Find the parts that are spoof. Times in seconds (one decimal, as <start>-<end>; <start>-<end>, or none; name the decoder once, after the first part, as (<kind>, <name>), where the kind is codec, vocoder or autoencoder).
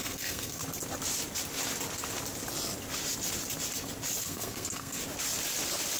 0.0-0.6 (codec, SNAC); 4.2-5.0